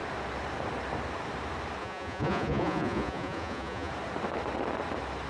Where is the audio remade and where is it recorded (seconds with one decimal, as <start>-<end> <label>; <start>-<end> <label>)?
0.0-1.8 recorded; 1.8-3.9 remade; 3.9-5.3 recorded